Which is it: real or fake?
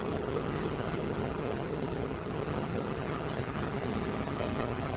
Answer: fake